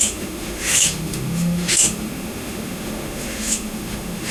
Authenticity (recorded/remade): remade